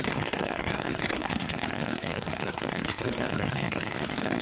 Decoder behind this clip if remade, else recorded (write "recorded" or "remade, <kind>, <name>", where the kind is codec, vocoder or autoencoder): remade, codec, SNAC